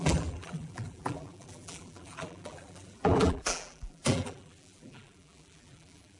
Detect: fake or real fake